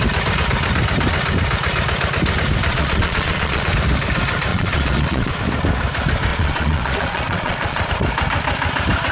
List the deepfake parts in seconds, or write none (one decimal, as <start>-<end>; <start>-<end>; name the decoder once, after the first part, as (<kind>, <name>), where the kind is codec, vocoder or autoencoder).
2.7-3.7 (vocoder, Vocos); 4.5-5.4; 6.3-7.9